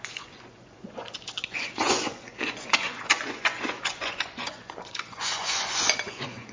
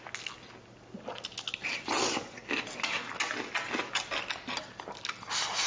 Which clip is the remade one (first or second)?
first